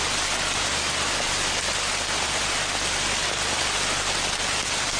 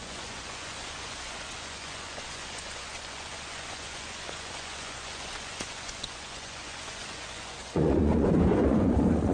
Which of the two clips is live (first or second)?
first